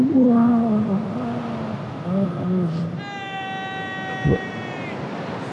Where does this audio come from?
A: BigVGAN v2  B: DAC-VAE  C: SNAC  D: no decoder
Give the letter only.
D